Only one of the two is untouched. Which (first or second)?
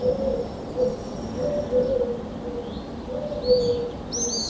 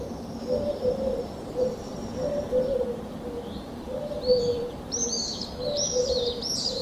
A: first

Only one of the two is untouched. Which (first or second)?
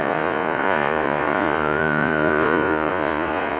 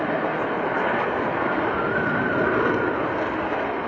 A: second